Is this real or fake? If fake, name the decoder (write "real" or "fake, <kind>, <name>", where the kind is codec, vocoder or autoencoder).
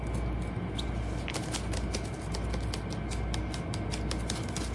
real